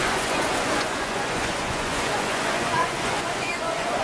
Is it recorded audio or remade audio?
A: remade